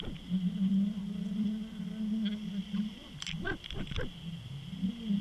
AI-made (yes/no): no